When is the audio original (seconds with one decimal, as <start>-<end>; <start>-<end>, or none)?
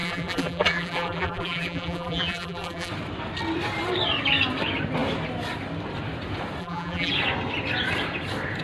2.9-6.6; 7.1-8.6